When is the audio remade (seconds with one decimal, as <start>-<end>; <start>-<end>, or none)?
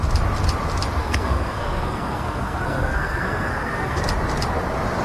1.0-4.0